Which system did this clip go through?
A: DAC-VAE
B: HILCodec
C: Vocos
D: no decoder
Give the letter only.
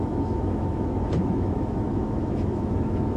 A